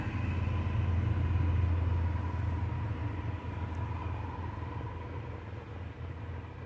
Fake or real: real